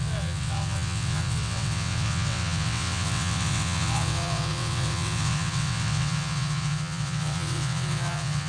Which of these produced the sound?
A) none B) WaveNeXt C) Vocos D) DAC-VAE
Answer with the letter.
B